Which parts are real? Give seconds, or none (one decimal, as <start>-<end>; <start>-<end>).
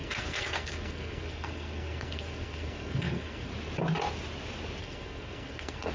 3.5-4.8